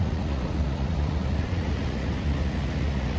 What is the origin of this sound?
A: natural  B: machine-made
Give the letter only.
B